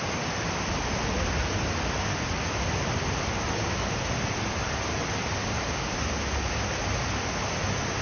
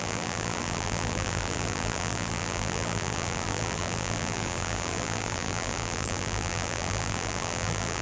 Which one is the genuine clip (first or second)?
first